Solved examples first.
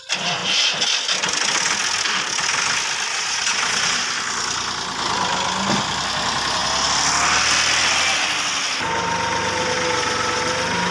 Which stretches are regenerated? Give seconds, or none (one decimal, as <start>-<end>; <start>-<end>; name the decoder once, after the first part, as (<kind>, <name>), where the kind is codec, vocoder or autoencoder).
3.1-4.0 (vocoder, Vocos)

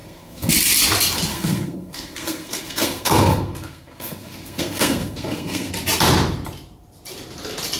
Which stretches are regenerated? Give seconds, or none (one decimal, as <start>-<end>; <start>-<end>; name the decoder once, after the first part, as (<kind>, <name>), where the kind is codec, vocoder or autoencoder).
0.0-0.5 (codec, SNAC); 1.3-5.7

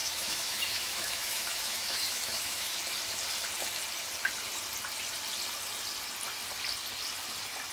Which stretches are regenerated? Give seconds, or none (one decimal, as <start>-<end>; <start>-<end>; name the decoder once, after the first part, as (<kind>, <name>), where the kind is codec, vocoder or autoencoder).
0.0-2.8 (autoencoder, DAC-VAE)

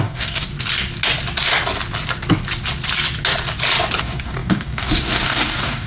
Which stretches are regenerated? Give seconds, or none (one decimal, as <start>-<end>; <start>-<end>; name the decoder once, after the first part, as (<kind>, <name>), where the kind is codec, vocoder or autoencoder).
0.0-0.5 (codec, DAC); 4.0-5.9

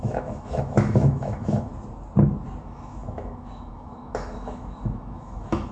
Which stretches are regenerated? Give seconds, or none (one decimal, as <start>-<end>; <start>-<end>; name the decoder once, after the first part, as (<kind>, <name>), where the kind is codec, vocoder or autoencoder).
0.0-1.7 (autoencoder, DAC-VAE); 2.6-5.7

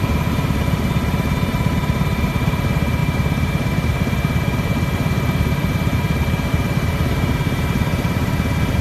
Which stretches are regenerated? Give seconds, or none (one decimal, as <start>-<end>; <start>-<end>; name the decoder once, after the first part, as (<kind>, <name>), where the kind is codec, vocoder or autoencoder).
0.0-8.8 (vocoder, BigVGAN v2)

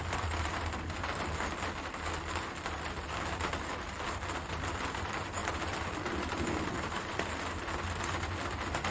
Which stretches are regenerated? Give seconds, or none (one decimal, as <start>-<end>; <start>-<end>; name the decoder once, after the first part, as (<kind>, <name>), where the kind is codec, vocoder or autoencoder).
5.4-7.2 (vocoder, BigVGAN v2)

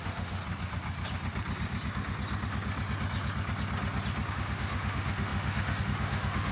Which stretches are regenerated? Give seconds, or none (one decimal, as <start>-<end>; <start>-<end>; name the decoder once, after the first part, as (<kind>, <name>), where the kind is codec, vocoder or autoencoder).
0.0-0.4 (autoencoder, DAC-VAE); 4.3-6.5